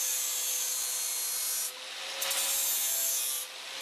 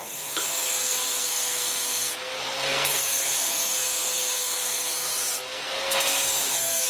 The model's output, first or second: second